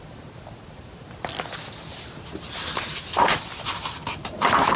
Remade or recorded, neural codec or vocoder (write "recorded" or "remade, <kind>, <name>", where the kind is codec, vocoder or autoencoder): recorded